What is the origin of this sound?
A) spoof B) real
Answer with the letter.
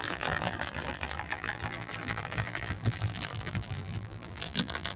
A